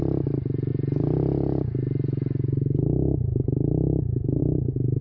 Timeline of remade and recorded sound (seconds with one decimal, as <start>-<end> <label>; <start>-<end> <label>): 0.0-4.4 recorded; 4.4-5.0 remade